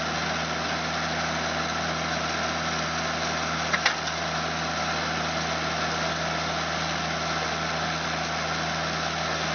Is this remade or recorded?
recorded